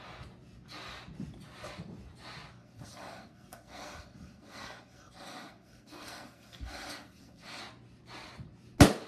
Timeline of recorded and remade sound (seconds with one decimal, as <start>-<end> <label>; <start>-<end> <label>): 0.0-2.6 recorded; 2.6-7.6 remade; 7.6-9.1 recorded